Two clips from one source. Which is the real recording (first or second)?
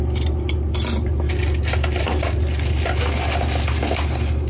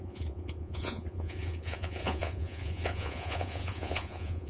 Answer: first